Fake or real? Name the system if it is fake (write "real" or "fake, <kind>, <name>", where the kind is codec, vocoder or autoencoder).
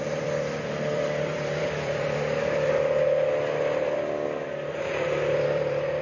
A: fake, vocoder, BigVGAN v2